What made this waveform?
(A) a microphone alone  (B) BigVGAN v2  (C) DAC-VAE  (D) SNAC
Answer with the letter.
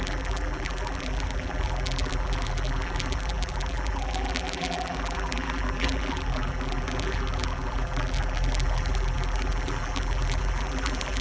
B